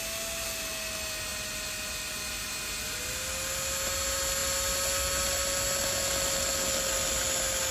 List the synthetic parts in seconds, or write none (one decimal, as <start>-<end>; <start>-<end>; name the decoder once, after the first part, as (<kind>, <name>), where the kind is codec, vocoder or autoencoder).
none